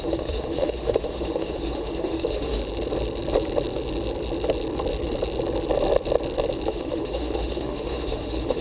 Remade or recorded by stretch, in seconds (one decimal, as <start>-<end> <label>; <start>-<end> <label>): 0.0-2.6 remade; 2.6-6.7 recorded; 6.7-8.6 remade